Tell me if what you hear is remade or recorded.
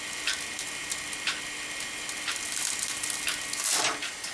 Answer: recorded